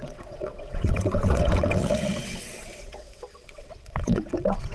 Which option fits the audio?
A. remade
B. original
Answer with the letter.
A